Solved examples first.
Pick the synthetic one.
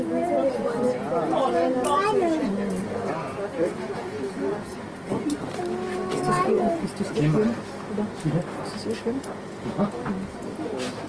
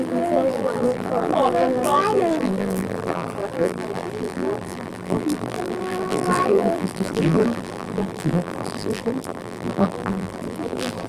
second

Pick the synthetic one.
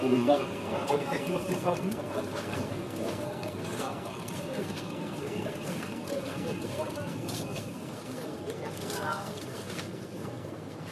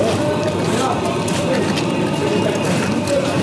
first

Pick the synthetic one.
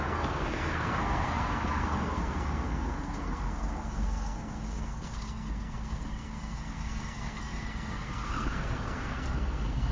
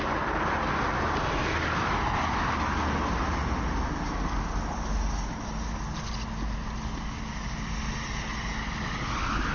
first